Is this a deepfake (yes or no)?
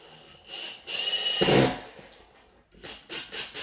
no